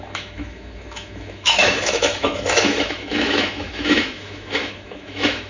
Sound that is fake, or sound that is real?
fake